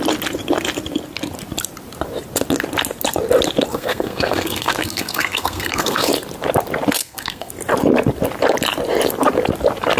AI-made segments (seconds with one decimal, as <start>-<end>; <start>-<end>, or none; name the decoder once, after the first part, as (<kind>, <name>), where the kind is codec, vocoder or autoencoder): 3.7-6.1 (codec, SNAC); 7.0-7.5